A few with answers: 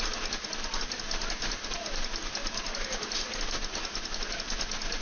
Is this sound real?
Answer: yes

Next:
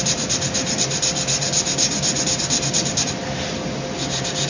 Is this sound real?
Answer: yes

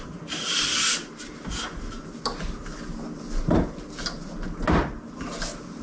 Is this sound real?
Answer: yes